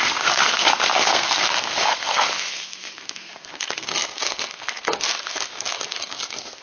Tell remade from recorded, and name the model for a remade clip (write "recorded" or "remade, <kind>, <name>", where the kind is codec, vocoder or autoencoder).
remade, codec, SNAC